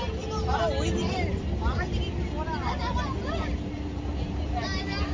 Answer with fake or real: real